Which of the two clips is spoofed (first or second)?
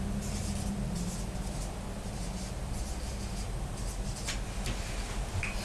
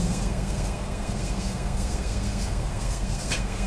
second